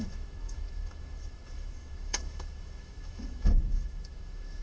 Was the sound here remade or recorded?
remade